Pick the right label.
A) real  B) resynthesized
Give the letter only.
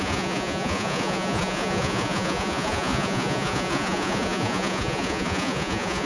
B